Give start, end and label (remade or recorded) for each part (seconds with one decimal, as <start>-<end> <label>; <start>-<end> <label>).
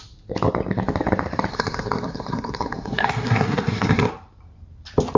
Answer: 0.0-1.5 recorded; 1.5-4.1 remade; 4.1-5.2 recorded